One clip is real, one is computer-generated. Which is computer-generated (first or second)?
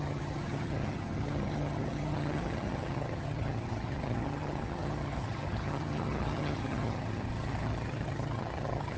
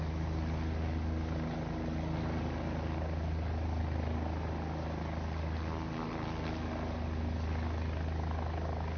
first